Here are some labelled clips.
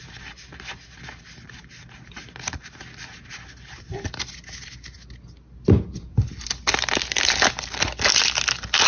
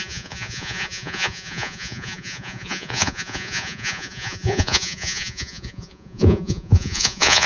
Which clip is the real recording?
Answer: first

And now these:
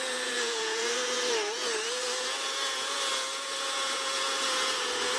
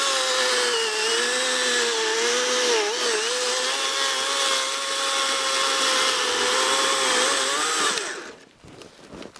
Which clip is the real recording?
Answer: second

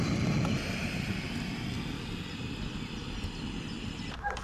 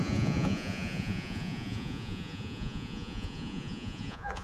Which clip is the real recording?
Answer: first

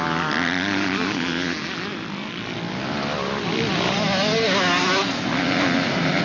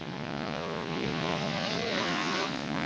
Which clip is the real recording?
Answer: first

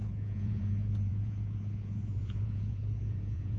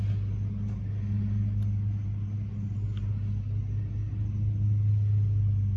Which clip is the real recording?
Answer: second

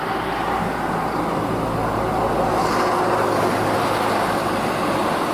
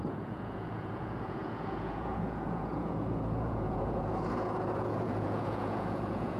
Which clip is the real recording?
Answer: first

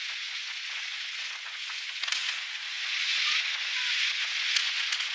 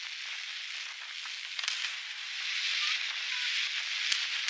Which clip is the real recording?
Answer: second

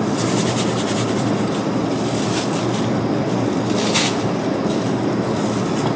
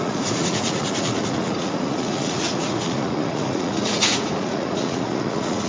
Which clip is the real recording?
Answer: first